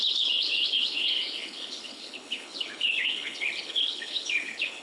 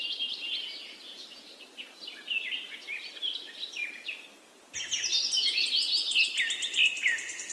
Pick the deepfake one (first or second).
first